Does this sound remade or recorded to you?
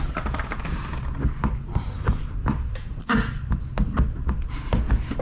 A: recorded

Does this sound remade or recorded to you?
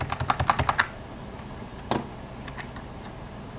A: recorded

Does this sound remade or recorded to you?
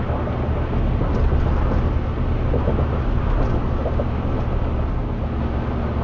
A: recorded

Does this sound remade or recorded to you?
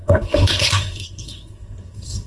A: remade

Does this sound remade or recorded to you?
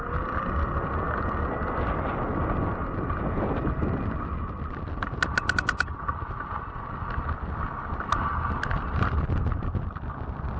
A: recorded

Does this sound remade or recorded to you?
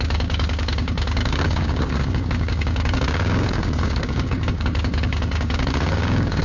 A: remade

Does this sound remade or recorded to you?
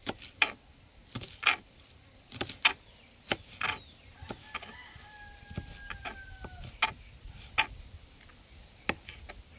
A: recorded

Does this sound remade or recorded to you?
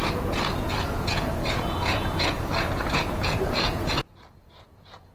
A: remade